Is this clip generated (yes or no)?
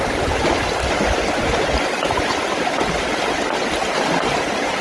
no